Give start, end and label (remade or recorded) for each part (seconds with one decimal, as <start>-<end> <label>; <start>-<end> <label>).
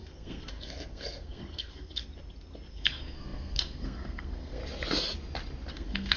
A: 0.0-2.0 remade; 2.0-2.7 recorded; 2.7-4.6 remade; 4.6-5.7 recorded; 5.7-6.2 remade